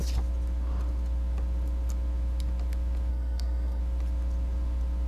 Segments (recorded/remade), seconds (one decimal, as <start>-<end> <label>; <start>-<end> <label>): 0.0-3.1 recorded; 3.1-3.8 remade; 3.8-5.1 recorded